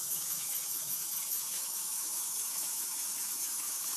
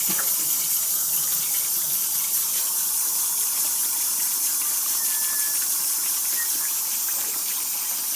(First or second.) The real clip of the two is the second